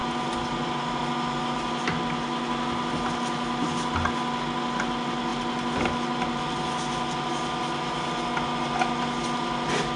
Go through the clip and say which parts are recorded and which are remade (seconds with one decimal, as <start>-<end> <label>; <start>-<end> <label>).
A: 0.0-10.0 recorded